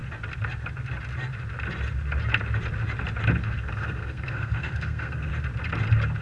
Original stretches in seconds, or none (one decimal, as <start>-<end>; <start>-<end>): 0.0-3.4; 5.3-6.2